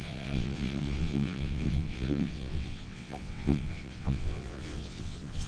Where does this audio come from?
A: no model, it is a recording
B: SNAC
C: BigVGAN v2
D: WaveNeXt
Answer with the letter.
D